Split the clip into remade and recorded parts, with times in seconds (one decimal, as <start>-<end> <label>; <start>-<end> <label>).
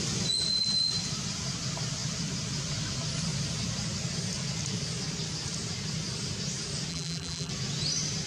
0.0-6.9 recorded; 6.9-7.5 remade; 7.5-8.3 recorded